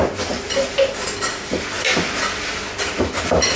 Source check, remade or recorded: recorded